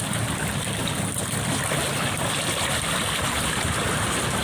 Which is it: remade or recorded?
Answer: remade